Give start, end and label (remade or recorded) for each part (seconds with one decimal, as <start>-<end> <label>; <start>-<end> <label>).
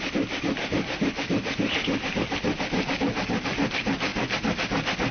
0.0-5.1 recorded